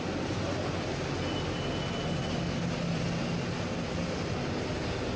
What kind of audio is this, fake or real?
real